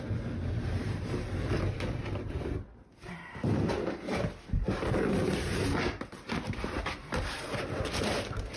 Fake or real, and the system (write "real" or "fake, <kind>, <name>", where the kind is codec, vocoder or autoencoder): fake, vocoder, BigVGAN v2